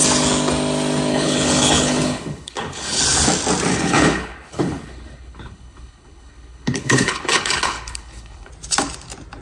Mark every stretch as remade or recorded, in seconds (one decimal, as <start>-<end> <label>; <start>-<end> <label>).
0.0-1.1 recorded; 1.1-3.0 remade; 3.0-3.7 recorded; 3.7-8.5 remade; 8.5-9.4 recorded